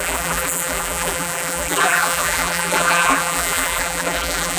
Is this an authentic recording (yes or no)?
no